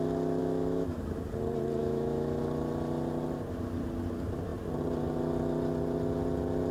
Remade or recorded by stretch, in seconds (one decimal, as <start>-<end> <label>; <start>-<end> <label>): 0.0-0.4 recorded; 0.4-1.0 remade; 1.0-1.8 recorded; 1.8-2.4 remade; 2.4-6.7 recorded